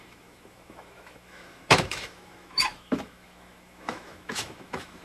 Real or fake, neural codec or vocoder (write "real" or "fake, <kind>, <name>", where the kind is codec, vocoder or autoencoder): fake, autoencoder, DAC-VAE